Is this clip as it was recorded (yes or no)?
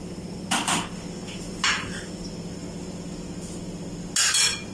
yes